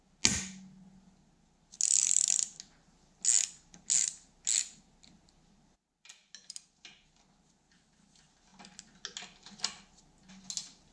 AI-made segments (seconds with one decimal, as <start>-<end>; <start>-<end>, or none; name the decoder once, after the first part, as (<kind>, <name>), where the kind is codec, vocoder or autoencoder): none